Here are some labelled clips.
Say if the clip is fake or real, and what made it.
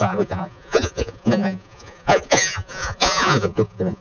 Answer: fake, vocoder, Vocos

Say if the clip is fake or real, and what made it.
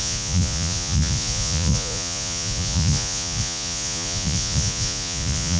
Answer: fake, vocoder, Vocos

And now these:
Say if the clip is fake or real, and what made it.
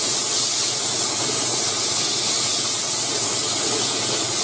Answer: fake, vocoder, Vocos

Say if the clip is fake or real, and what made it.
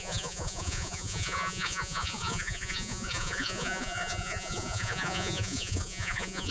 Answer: fake, vocoder, Vocos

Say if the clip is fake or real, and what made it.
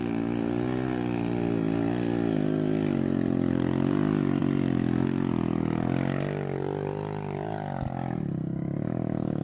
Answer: real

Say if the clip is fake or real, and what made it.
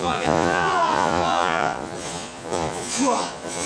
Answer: fake, vocoder, Vocos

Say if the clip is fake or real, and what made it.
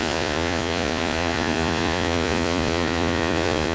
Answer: fake, vocoder, Vocos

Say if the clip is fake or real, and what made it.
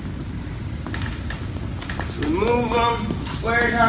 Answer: real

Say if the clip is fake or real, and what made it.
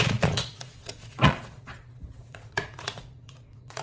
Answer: fake, vocoder, Vocos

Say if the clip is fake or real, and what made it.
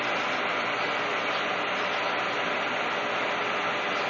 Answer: real